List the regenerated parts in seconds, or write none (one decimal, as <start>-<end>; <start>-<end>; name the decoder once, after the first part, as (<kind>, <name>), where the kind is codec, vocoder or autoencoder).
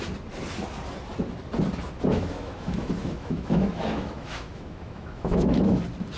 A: 2.1-5.8 (autoencoder, DAC-VAE)